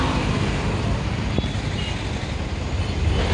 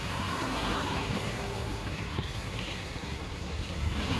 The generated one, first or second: second